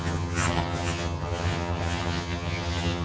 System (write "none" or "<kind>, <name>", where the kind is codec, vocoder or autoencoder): vocoder, HiFi-GAN